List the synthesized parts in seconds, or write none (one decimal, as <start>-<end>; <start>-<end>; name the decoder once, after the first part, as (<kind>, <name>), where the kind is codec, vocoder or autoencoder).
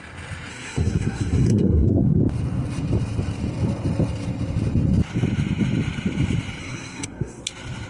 0.5-2.2 (codec, SNAC); 6.6-7.4